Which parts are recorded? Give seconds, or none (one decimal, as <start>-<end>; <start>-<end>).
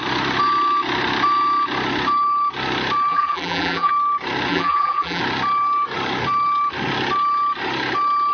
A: 0.0-3.1; 3.9-4.5; 5.2-8.3